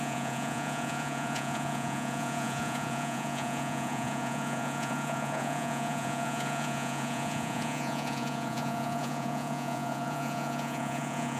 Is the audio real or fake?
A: fake